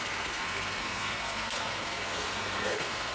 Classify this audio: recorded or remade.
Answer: remade